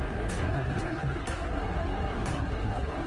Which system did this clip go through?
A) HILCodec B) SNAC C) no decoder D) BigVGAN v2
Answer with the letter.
B